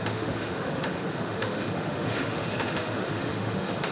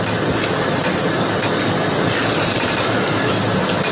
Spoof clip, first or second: first